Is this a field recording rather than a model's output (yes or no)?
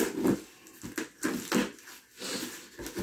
yes